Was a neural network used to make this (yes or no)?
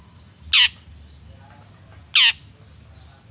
no